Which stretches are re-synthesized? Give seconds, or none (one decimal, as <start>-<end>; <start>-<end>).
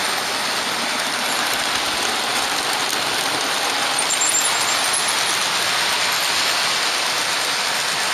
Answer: none